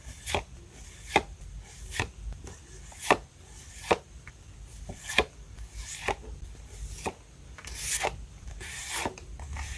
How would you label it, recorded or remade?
remade